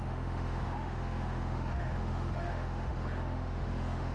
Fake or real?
fake